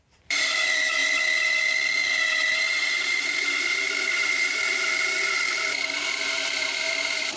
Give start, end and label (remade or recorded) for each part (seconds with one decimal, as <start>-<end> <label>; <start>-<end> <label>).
0.0-1.0 remade; 1.0-2.5 recorded; 2.5-7.4 remade